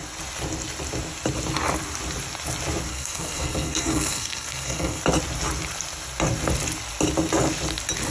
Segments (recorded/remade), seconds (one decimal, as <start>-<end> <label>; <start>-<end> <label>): 0.0-2.9 recorded; 2.9-5.0 remade; 5.0-8.1 recorded